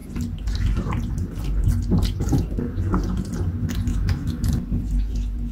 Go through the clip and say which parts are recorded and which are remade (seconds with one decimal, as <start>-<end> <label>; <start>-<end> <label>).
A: 0.0-3.9 recorded; 3.9-4.5 remade; 4.5-5.5 recorded